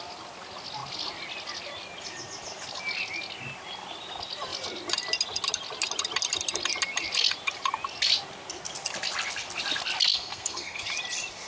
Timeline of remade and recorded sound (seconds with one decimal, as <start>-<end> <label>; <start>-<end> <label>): 0.0-10.1 recorded; 10.1-10.8 remade; 10.8-11.5 recorded

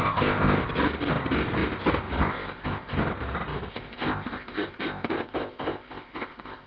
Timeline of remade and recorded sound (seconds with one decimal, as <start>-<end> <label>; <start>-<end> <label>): 0.0-0.6 remade; 0.6-2.2 recorded; 2.2-3.0 remade; 3.0-3.7 recorded; 3.7-6.7 remade

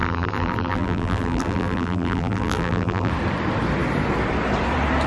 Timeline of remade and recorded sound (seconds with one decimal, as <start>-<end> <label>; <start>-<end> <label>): 0.0-3.1 remade; 3.1-5.1 recorded

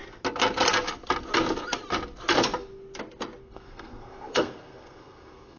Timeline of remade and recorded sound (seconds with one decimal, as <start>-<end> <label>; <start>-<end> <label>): 0.0-3.4 recorded; 3.4-5.6 remade

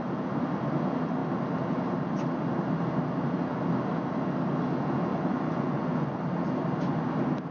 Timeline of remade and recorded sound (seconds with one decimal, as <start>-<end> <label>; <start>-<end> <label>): 0.0-5.1 recorded; 5.1-6.2 remade; 6.2-7.5 recorded